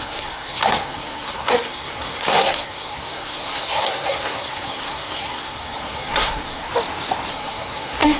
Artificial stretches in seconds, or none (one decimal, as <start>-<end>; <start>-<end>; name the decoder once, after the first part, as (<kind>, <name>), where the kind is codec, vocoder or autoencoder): 0.0-6.7 (codec, SNAC); 7.3-8.2